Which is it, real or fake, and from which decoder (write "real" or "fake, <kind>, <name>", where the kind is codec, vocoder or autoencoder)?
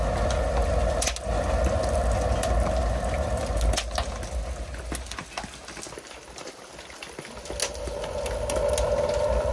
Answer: real